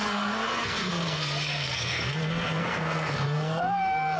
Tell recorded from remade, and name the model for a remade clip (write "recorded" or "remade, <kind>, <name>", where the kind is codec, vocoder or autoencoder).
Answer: remade, codec, SNAC